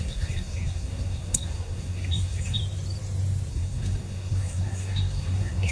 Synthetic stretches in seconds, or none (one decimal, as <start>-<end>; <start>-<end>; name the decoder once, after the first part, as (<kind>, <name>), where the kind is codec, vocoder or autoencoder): 0.0-2.6 (codec, SNAC); 3.5-5.7